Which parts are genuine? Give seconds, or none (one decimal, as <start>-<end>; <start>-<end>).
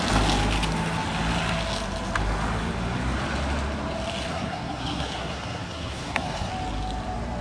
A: 0.0-4.3; 6.5-7.4